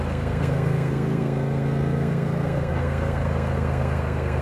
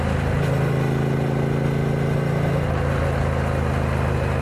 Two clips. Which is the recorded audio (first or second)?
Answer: second